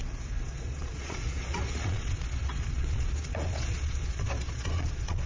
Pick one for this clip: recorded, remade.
remade